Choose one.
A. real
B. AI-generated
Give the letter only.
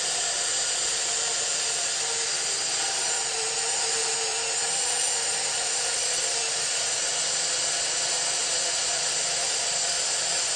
A